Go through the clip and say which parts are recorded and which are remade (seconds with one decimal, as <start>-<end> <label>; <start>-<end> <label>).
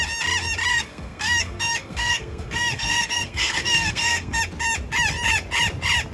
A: 0.0-0.7 recorded; 0.7-4.4 remade; 4.4-6.1 recorded